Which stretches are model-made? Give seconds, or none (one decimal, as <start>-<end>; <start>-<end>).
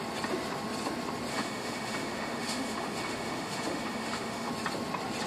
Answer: 1.3-4.5